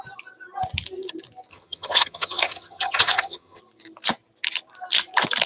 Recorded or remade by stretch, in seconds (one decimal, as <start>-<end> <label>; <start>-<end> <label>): 0.0-1.5 recorded; 1.5-3.6 remade; 3.6-5.5 recorded